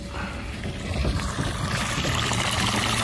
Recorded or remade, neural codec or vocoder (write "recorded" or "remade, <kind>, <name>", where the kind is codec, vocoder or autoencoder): recorded